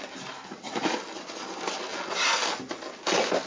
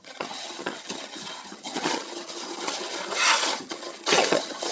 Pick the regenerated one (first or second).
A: second